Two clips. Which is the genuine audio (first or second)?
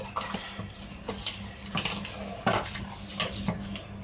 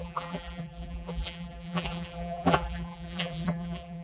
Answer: first